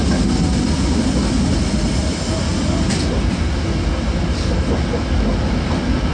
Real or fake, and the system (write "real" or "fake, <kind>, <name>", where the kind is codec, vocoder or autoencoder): real